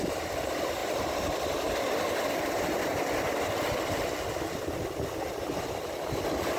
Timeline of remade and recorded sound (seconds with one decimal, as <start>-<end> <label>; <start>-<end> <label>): 0.0-6.6 recorded